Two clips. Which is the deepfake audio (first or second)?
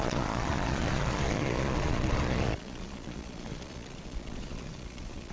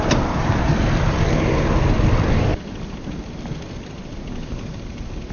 first